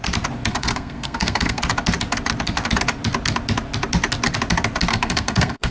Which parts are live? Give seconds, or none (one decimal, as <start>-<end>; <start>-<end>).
0.0-0.5; 1.6-4.9